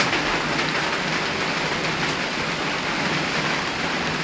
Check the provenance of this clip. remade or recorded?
recorded